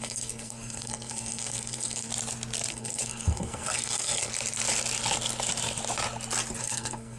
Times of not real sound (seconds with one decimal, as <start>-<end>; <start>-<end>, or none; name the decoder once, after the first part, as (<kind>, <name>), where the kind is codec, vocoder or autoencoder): 0.0-2.1 (codec, SNAC); 2.7-4.3; 6.6-7.2